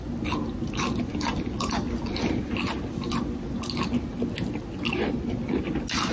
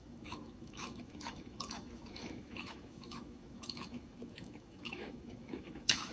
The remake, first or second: second